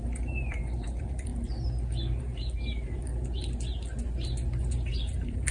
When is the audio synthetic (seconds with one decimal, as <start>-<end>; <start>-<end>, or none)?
0.0-1.3; 2.2-3.1; 4.6-5.5